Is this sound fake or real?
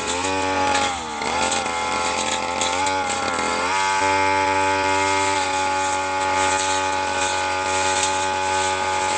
real